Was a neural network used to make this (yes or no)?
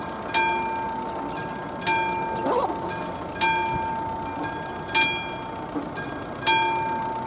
no